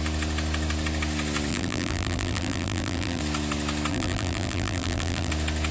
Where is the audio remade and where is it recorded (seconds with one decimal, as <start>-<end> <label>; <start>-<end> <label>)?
0.0-1.5 recorded; 1.5-3.2 remade; 3.2-3.9 recorded; 3.9-5.3 remade; 5.3-5.7 recorded